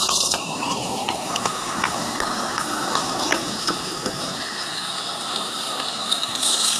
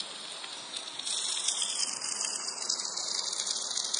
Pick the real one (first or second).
second